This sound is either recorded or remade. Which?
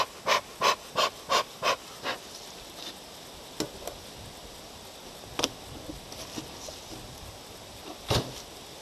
recorded